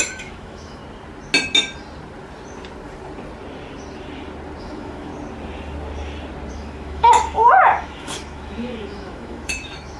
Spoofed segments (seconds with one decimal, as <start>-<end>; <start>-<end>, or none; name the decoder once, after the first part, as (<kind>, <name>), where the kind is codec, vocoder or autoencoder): 0.0-0.8 (autoencoder, DAC-VAE); 4.6-5.1; 6.5-10.0